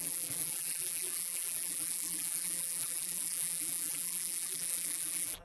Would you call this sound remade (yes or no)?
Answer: yes